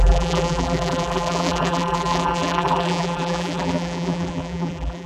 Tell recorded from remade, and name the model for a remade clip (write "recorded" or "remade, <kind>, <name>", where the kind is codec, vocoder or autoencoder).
remade, vocoder, BigVGAN v2